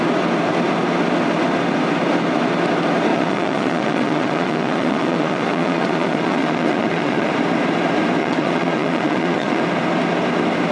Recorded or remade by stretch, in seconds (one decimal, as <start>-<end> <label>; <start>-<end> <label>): 0.0-3.1 recorded; 3.1-7.3 remade; 7.3-8.2 recorded; 8.2-9.6 remade; 9.6-10.7 recorded